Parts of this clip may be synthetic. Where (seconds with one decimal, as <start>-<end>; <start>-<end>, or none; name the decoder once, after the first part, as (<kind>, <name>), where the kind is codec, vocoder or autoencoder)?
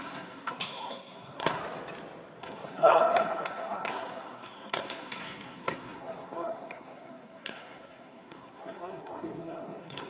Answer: 0.0-1.6 (codec, SNAC); 2.4-10.1